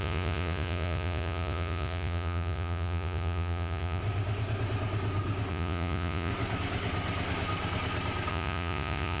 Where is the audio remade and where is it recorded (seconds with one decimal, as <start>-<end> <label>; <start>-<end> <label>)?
0.0-4.0 remade; 4.0-5.5 recorded; 5.5-6.3 remade; 6.3-8.3 recorded; 8.3-9.2 remade